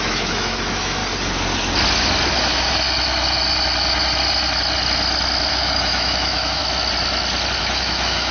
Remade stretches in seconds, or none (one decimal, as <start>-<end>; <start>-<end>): 0.0-1.0; 5.5-6.6; 7.6-8.3